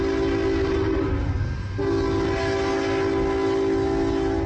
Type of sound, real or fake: real